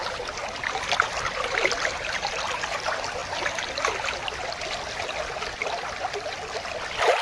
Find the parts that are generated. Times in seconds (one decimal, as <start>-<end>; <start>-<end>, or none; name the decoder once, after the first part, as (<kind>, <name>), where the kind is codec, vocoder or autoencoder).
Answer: none